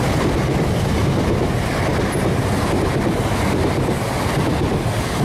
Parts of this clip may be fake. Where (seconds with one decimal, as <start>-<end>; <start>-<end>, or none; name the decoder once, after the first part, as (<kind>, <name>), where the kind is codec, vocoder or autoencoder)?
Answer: 0.0-1.0 (vocoder, BigVGAN v2); 2.8-5.2